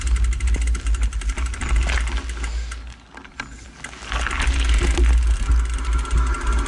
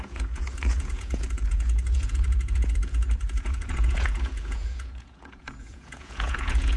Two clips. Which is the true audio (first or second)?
first